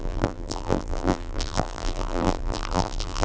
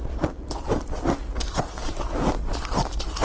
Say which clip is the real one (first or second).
second